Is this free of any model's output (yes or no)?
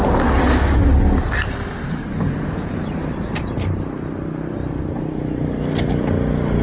yes